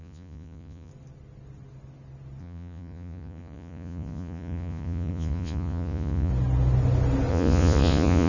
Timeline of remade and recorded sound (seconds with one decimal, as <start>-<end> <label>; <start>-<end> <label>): 0.0-0.9 remade; 0.9-2.4 recorded; 2.4-6.3 remade; 6.3-7.3 recorded; 7.3-8.3 remade